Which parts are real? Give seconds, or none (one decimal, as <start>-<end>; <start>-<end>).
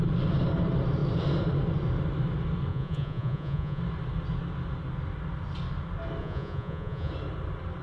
0.0-2.7; 3.8-6.2; 7.1-7.8